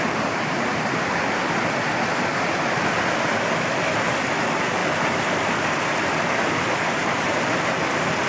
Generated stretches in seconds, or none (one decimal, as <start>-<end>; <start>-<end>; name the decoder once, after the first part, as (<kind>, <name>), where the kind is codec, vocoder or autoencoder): none